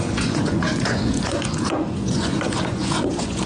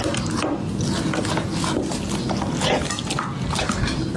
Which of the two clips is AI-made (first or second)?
first